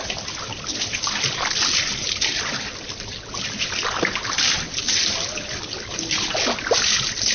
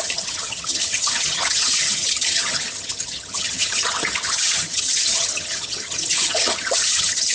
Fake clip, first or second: second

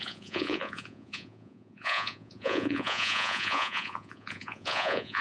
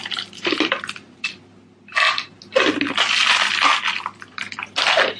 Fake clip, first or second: first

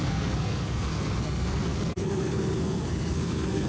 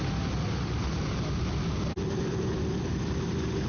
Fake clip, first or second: first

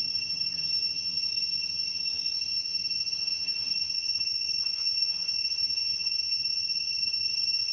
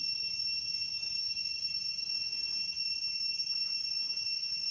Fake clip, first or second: first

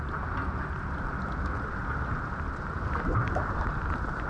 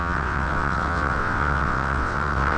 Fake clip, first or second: second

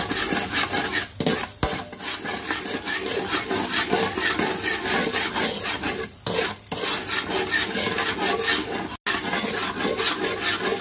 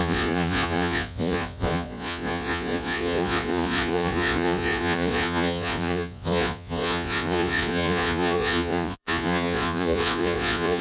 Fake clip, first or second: second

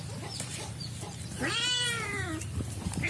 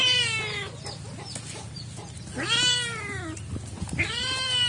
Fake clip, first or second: first